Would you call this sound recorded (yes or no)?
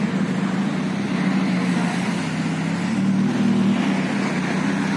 yes